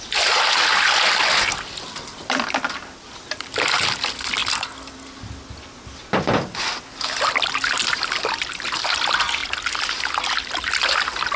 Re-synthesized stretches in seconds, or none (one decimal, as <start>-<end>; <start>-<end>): none